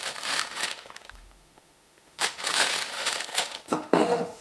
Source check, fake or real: fake